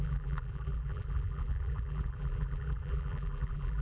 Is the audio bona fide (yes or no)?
no